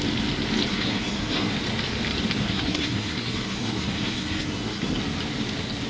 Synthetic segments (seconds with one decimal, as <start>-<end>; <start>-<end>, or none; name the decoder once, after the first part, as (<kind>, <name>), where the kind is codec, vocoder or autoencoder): 0.7-1.5 (codec, SNAC); 2.4-5.0